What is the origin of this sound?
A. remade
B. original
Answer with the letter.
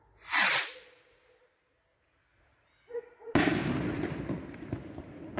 B